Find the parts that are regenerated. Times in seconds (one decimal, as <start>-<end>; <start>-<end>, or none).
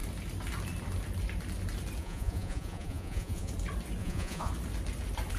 2.0-3.5; 4.0-4.5